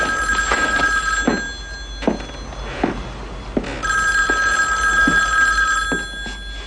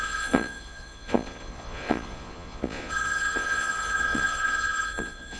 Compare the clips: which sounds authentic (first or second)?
first